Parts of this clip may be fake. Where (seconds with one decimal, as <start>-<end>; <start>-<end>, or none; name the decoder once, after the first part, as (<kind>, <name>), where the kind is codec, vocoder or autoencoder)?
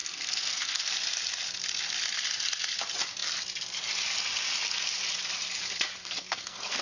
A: 0.0-0.9 (codec, SNAC); 6.0-6.8